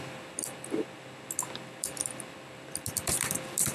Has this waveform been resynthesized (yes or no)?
yes